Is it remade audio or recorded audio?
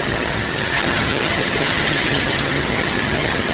remade